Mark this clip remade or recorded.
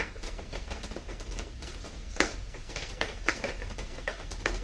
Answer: remade